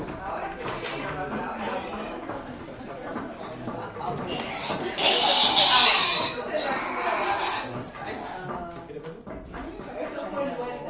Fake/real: real